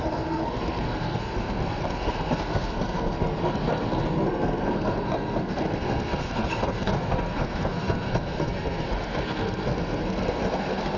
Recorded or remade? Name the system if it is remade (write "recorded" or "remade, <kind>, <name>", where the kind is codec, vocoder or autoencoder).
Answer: remade, codec, SNAC